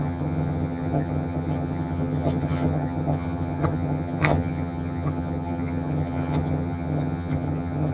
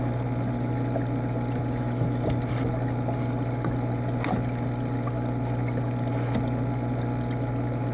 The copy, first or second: first